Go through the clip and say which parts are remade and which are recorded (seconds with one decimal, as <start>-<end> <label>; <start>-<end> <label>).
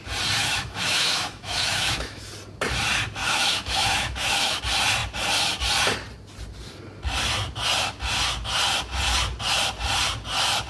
0.0-0.4 recorded; 0.4-2.3 remade; 2.3-3.2 recorded; 3.2-4.6 remade; 4.6-10.7 recorded